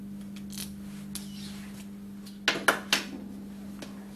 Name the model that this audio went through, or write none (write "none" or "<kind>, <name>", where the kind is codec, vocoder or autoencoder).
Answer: none